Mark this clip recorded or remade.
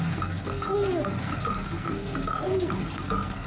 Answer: remade